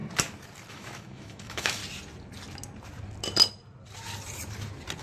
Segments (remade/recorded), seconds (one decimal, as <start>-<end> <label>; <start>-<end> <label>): 0.0-0.7 recorded; 0.7-1.8 remade; 1.8-5.0 recorded